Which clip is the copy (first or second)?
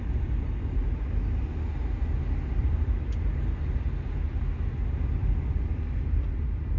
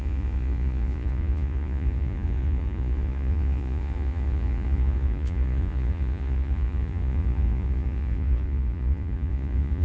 second